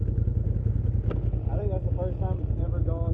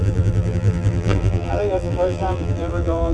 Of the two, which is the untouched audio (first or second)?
first